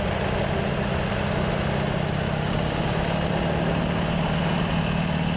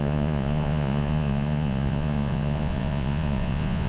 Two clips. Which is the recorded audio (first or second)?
first